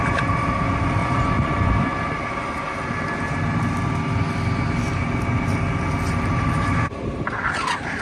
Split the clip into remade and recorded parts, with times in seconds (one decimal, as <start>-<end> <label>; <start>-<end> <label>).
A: 0.0-1.0 recorded; 1.0-1.7 remade; 1.7-8.0 recorded